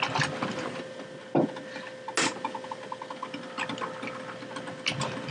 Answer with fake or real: real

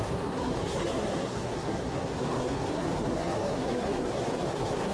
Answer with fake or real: fake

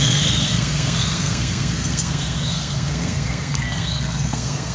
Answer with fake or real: fake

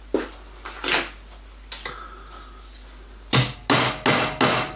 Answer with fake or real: real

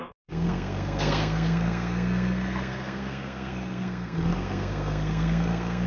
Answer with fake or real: fake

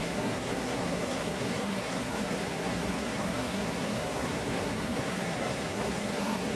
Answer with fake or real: fake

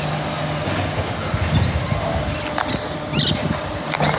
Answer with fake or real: real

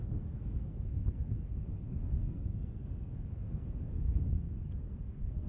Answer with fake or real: fake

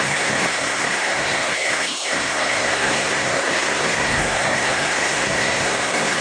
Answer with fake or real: fake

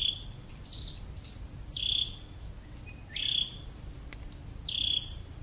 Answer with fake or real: real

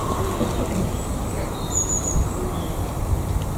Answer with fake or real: real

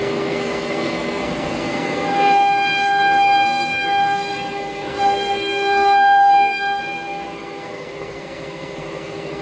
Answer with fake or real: fake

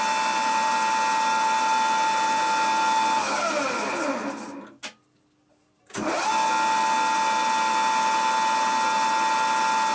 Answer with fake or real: real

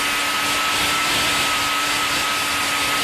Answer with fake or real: real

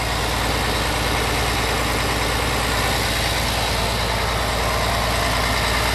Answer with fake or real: real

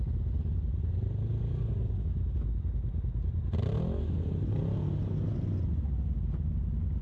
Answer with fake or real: real